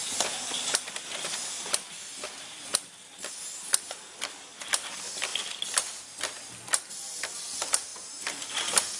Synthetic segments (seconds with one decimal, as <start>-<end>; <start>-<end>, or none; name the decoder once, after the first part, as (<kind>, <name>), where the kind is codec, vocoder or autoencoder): 2.7-3.3 (vocoder, BigVGAN v2)